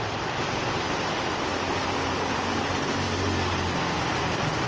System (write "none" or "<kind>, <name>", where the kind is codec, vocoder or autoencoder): none